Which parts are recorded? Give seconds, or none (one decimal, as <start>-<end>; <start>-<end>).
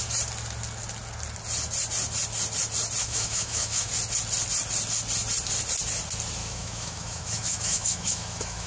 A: 0.0-3.0; 3.9-6.4